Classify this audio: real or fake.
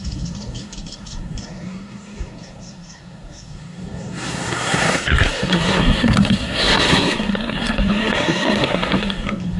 fake